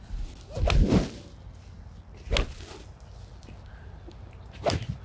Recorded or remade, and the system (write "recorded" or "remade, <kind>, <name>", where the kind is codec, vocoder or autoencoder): recorded